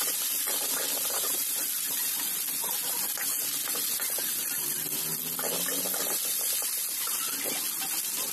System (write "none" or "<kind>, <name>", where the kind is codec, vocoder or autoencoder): none